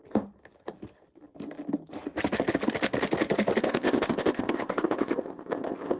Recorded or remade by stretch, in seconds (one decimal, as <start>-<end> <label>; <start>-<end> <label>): 0.0-3.6 recorded; 3.6-6.0 remade